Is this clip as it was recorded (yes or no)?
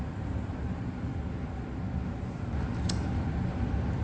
yes